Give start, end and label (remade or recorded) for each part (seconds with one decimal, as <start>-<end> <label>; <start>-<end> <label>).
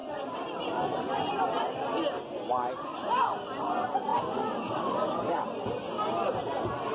0.0-6.9 recorded